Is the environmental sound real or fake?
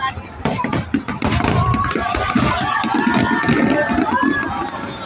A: fake